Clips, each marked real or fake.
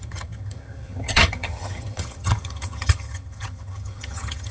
fake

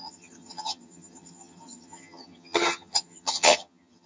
fake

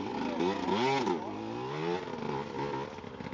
real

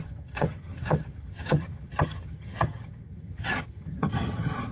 fake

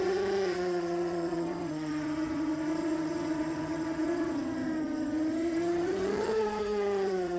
fake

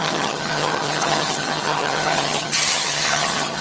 fake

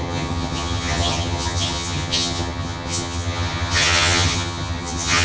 fake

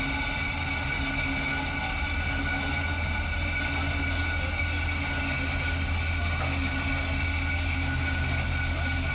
real